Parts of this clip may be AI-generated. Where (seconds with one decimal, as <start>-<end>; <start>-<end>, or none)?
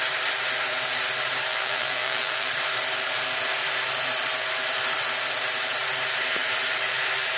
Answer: 1.5-2.5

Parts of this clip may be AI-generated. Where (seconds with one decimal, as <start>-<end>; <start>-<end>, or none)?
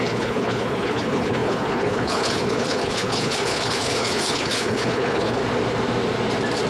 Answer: 0.0-5.4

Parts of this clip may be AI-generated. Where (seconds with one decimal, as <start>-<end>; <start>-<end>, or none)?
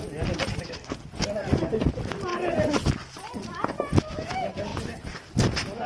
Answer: none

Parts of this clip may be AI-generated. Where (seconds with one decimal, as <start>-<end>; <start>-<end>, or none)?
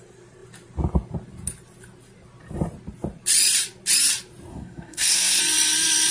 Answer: 4.5-5.4